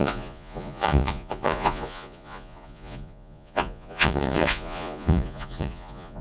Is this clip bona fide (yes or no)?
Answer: no